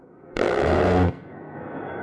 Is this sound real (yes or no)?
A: no